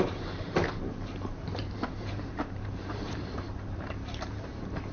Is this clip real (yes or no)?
no